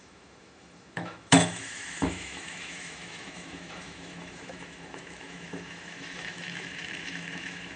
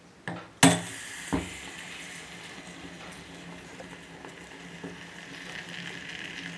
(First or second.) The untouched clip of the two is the second